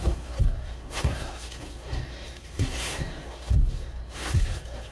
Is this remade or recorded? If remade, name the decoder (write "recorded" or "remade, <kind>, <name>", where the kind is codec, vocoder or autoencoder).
remade, codec, SNAC